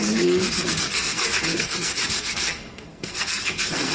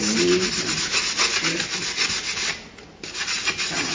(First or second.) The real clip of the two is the second